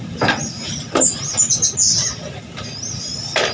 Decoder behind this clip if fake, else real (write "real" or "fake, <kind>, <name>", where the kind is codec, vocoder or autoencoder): real